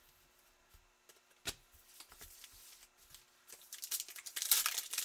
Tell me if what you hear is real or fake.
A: real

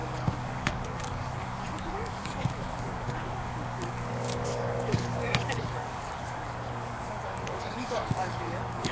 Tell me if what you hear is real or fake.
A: fake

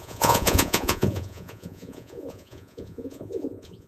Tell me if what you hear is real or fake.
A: fake